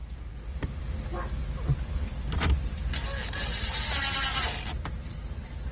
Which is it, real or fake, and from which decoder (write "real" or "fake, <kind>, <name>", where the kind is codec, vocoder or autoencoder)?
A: real